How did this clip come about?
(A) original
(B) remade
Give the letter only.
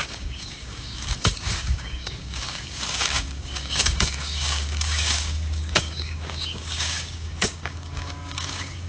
B